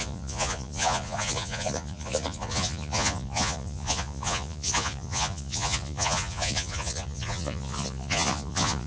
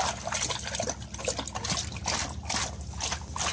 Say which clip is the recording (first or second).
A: second